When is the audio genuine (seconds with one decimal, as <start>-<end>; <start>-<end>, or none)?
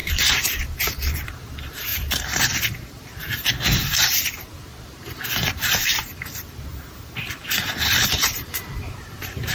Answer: 6.7-8.1